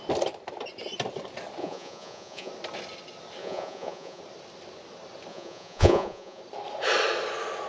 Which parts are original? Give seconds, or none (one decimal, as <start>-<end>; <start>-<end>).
0.0-1.6; 2.5-3.4; 4.2-5.3; 6.4-7.7